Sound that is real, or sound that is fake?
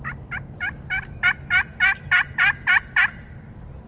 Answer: real